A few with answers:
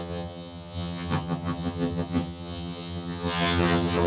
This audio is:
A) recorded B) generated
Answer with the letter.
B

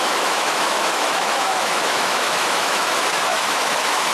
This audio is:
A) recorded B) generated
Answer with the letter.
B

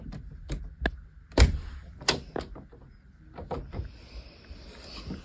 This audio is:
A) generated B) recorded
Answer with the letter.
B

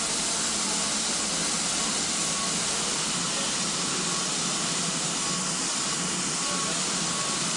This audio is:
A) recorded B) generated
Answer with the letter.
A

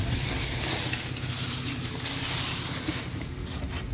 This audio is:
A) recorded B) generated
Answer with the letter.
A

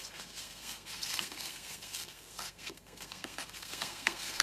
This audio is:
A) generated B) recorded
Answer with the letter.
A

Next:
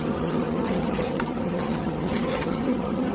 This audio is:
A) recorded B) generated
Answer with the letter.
B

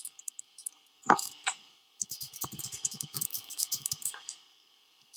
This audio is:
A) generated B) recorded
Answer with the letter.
A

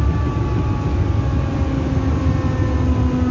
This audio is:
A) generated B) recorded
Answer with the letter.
B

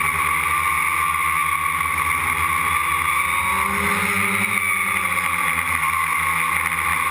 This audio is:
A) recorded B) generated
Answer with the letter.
A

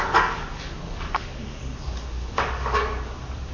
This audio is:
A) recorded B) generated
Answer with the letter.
B